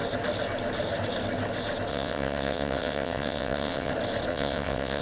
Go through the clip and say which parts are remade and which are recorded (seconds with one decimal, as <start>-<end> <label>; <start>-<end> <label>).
0.0-1.9 recorded; 1.9-3.9 remade; 3.9-4.3 recorded; 4.3-5.0 remade